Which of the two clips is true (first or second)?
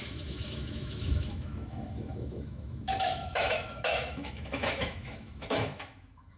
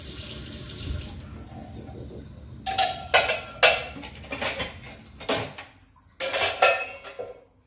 second